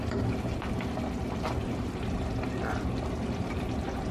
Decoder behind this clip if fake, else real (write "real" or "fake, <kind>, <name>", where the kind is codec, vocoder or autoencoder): fake, vocoder, BigVGAN v2